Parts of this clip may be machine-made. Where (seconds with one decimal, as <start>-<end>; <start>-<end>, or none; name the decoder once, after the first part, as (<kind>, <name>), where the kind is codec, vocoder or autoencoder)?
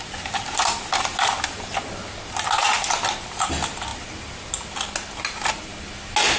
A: none